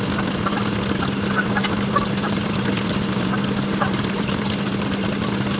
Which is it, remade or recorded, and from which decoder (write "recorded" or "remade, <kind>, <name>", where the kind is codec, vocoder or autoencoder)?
recorded